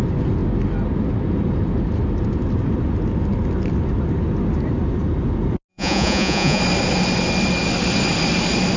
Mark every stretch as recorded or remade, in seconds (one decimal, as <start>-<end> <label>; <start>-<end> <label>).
0.0-5.7 recorded; 5.7-6.6 remade; 6.6-8.8 recorded

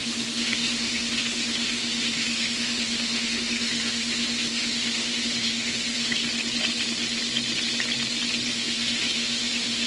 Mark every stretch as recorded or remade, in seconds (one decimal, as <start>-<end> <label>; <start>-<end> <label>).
0.0-6.2 remade; 6.2-8.5 recorded; 8.5-9.9 remade

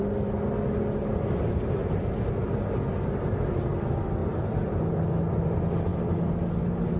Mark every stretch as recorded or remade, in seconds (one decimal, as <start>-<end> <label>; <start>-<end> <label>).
0.0-4.2 recorded; 4.2-4.8 remade; 4.8-7.0 recorded

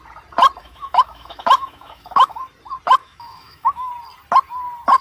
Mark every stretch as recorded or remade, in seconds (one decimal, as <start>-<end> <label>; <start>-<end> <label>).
0.0-0.6 recorded; 0.6-2.4 remade; 2.4-3.0 recorded; 3.0-3.9 remade; 3.9-5.0 recorded

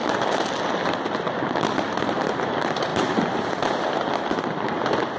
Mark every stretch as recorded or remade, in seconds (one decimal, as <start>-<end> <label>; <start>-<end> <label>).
0.0-5.2 recorded

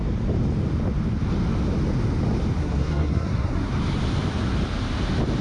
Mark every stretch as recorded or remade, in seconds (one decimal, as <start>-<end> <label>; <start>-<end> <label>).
0.0-2.6 recorded; 2.6-3.7 remade; 3.7-5.4 recorded

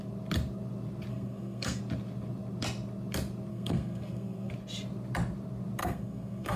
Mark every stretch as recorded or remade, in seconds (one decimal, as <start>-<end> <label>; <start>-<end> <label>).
0.0-1.1 recorded; 1.1-1.8 remade; 1.8-3.5 recorded; 3.5-4.5 remade; 4.5-5.8 recorded; 5.8-6.6 remade